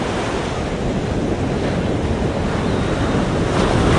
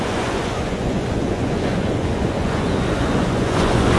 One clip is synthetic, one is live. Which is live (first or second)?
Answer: first